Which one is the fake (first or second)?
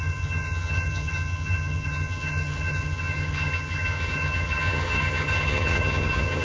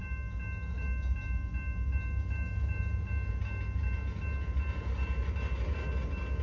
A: first